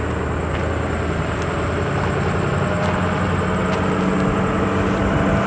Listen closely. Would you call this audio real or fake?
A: real